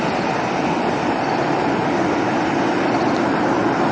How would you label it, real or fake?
real